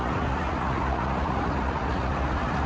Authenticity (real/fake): fake